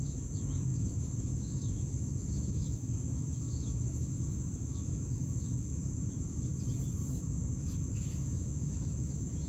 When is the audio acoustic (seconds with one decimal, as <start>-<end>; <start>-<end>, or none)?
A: 6.5-7.2